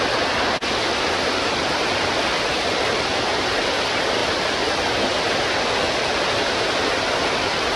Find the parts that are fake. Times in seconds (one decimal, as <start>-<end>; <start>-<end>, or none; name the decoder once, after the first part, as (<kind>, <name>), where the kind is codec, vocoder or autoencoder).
none